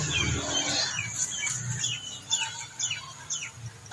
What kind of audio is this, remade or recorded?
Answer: recorded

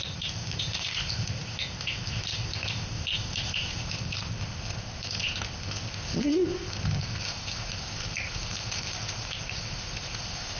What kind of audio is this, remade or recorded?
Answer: remade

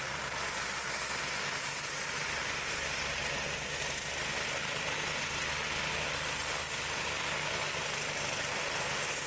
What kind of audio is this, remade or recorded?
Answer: recorded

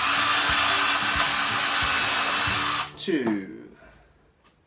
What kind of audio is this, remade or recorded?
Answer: recorded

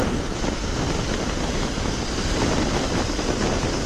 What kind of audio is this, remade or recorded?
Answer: recorded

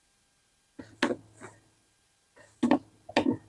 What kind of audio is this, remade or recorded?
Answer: recorded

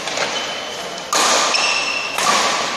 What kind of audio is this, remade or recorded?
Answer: recorded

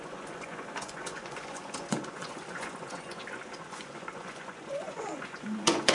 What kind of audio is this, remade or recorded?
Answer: remade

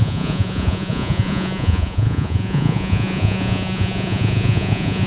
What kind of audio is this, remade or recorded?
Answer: remade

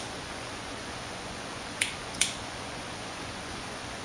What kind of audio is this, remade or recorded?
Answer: remade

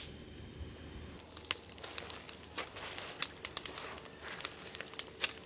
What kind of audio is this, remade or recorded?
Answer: recorded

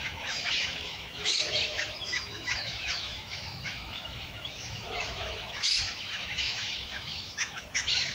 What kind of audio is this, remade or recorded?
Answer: remade